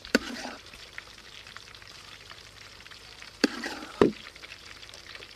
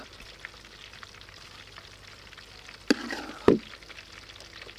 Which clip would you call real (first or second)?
second